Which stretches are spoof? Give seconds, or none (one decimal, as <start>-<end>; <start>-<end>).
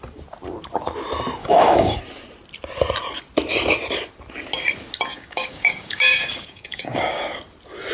1.4-2.0; 5.1-7.4